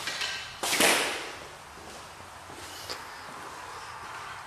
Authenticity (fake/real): real